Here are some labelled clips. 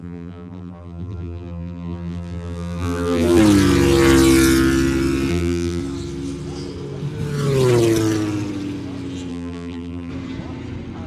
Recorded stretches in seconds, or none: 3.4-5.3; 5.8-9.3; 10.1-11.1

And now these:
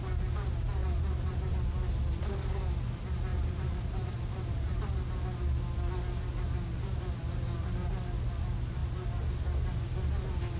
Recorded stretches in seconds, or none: 0.0-0.8; 1.5-3.3; 5.1-10.6

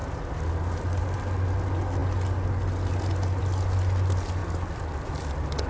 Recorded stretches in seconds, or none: 0.0-5.7

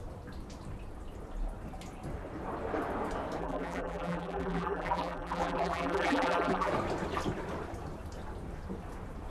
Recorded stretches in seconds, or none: 0.0-3.4; 6.7-9.3

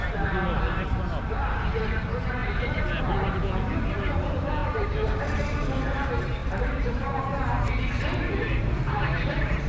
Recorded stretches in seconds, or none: 0.0-2.4; 3.0-4.6; 5.2-6.4

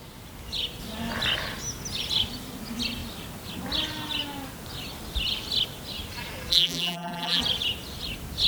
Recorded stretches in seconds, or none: 0.0-6.5; 7.4-8.5

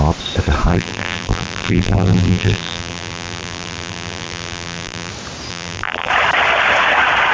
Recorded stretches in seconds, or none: 0.0-0.7; 5.1-5.5; 6.1-7.3